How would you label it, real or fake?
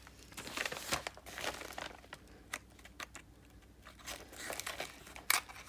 real